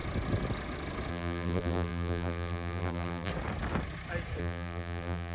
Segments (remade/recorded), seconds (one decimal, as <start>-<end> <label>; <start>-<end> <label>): 0.0-1.1 recorded; 1.1-3.3 remade; 3.3-4.4 recorded; 4.4-5.3 remade